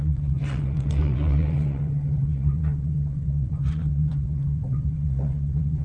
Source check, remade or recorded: remade